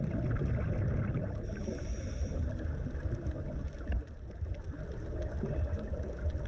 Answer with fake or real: real